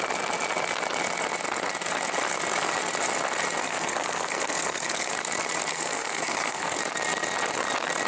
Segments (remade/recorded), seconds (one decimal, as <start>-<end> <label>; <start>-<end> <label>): 0.0-3.6 recorded; 3.6-5.1 remade; 5.1-5.7 recorded; 5.7-6.8 remade; 6.8-8.1 recorded